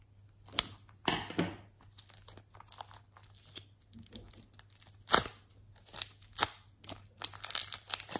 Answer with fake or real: real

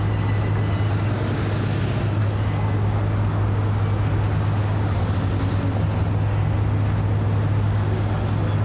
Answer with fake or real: real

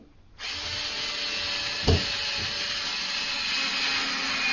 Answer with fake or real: real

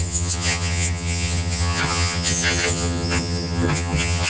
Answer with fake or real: fake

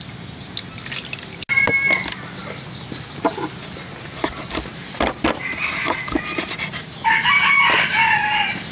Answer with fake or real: real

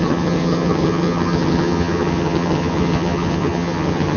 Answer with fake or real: fake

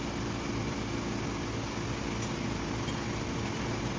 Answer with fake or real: real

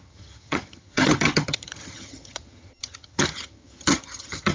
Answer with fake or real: fake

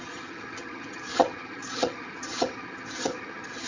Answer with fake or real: fake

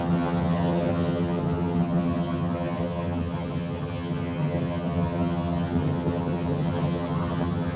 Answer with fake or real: fake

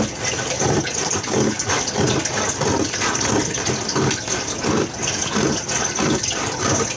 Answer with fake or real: real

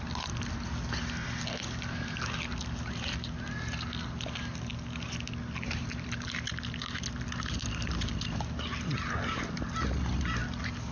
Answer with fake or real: real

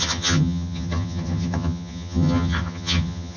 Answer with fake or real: fake